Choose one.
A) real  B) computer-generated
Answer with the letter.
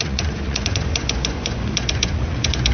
B